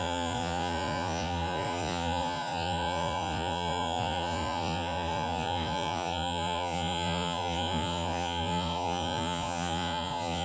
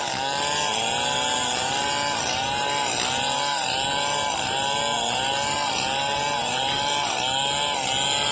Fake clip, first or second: first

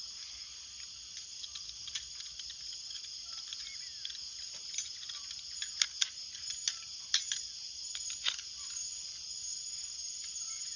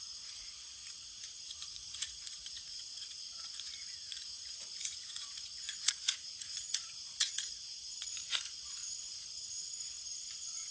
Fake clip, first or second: second